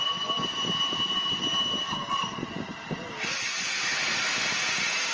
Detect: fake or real real